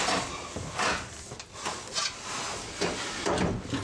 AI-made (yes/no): no